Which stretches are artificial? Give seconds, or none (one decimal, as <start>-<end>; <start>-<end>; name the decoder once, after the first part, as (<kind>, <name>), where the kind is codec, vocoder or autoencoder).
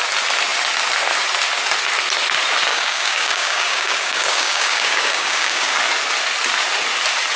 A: 2.7-5.8 (codec, DAC)